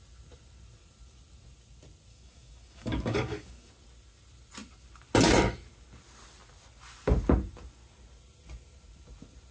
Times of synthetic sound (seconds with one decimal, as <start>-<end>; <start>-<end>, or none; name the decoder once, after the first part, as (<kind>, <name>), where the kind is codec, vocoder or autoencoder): 2.1-3.7 (codec, DAC)